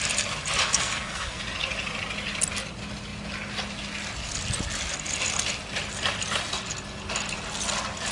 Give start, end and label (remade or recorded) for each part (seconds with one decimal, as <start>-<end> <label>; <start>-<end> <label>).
0.0-0.6 recorded; 0.6-1.4 remade; 1.4-8.1 recorded